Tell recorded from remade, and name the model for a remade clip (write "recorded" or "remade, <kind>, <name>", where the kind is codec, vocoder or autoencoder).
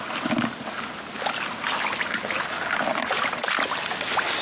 recorded